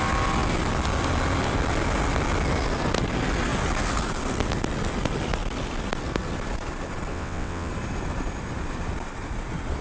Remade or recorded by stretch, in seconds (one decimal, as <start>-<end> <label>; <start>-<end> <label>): 0.0-7.1 recorded; 7.1-7.7 remade; 7.7-9.8 recorded